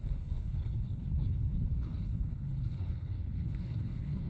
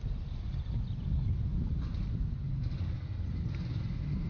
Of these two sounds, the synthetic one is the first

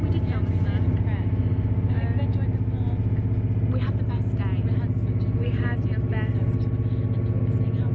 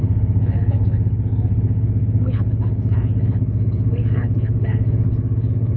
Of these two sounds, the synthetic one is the second